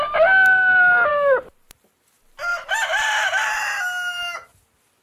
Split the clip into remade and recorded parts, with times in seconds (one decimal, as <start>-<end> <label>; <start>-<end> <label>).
0.0-2.5 recorded; 2.5-3.6 remade; 3.6-5.0 recorded